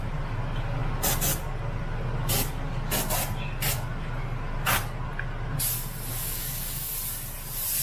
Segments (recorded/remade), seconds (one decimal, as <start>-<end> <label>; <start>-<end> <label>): 0.0-6.1 recorded; 6.1-6.9 remade; 6.9-7.8 recorded